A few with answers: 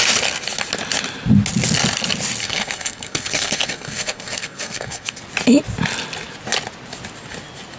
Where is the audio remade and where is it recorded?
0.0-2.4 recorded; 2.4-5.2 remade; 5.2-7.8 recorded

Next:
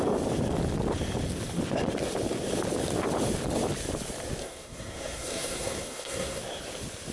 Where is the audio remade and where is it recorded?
0.0-4.4 recorded; 4.4-6.4 remade; 6.4-7.1 recorded

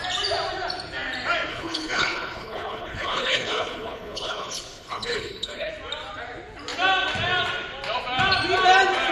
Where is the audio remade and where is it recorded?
0.0-1.5 recorded; 1.5-5.7 remade; 5.7-9.1 recorded